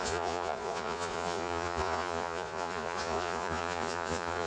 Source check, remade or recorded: remade